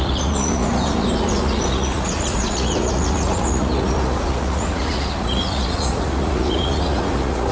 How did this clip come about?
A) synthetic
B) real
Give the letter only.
A